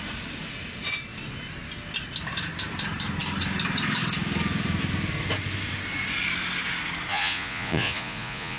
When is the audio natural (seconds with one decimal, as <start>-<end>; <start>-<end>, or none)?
0.0-7.1